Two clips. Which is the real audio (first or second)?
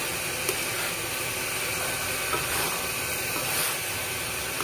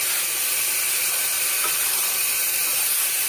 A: first